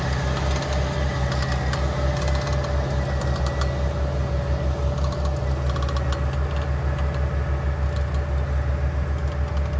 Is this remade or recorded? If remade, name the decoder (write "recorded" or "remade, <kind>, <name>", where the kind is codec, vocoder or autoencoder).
recorded